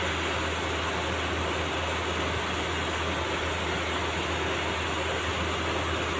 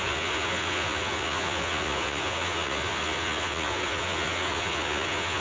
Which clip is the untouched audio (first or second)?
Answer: first